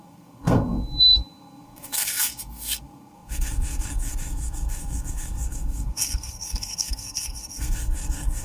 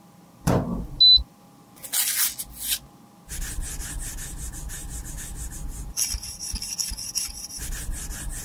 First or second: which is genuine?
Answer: second